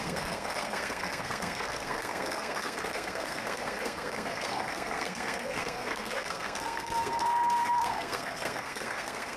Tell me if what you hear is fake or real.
fake